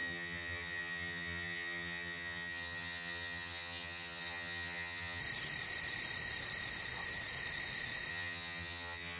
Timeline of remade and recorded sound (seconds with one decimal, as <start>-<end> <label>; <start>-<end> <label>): 0.0-5.2 remade; 5.2-8.1 recorded; 8.1-9.2 remade